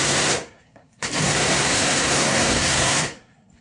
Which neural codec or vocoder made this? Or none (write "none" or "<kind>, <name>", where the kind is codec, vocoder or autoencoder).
codec, SNAC